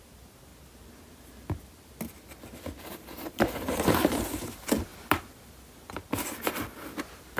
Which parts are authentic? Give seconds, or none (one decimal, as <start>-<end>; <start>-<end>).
0.5-2.8; 4.9-7.0